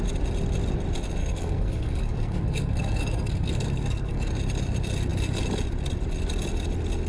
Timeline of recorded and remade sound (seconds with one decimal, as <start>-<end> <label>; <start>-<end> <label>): 0.0-1.2 recorded; 1.2-4.3 remade; 4.3-7.1 recorded